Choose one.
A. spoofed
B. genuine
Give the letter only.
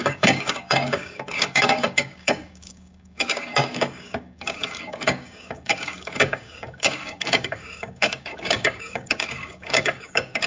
A